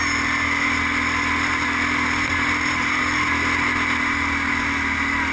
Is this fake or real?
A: real